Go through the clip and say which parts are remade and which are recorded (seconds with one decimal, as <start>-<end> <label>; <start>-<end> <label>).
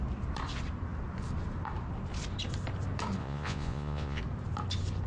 0.0-3.2 recorded; 3.2-4.2 remade; 4.2-5.1 recorded